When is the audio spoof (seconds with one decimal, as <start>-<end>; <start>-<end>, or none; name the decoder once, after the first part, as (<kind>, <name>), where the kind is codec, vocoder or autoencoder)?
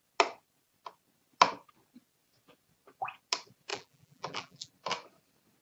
3.7-4.7 (vocoder, BigVGAN v2)